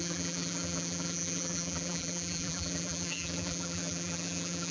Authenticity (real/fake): fake